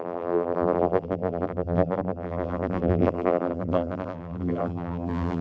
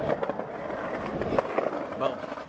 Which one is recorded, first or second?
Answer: second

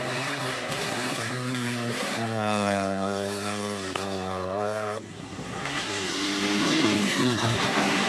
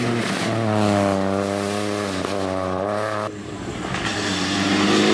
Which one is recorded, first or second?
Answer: second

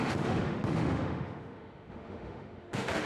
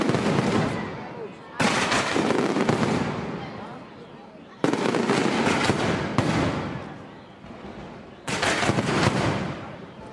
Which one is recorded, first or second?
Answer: second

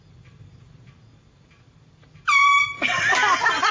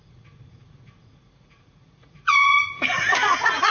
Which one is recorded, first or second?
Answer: first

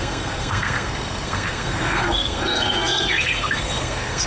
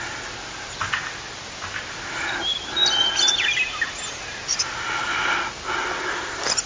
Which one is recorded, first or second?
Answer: second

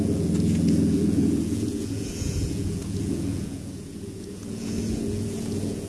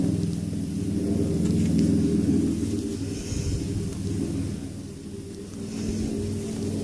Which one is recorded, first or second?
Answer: second